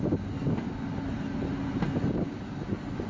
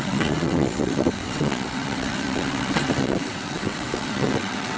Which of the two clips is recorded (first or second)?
first